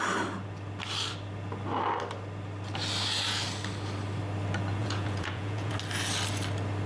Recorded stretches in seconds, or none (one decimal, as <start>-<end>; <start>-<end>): 0.0-4.8; 5.7-6.9